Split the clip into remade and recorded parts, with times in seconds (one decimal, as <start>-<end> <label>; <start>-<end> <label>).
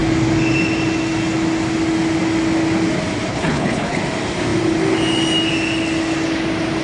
0.0-3.3 recorded; 3.3-4.0 remade; 4.0-6.8 recorded